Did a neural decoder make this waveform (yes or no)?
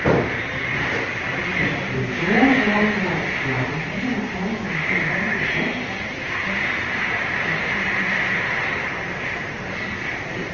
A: yes